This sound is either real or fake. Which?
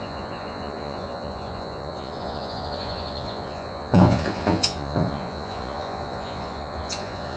fake